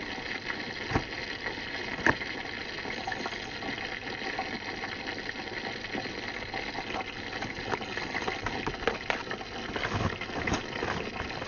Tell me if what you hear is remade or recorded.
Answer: recorded